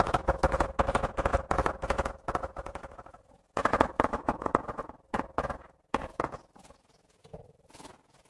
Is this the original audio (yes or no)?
no